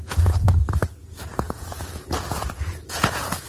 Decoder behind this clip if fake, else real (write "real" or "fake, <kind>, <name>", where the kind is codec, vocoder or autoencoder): fake, vocoder, Vocos